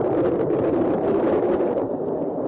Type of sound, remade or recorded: remade